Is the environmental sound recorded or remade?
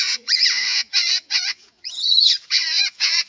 remade